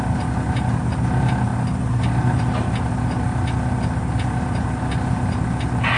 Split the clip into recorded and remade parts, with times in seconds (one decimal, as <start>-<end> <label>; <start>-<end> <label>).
0.0-6.0 recorded